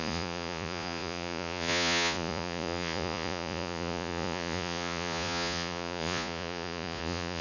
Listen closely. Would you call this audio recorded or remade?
remade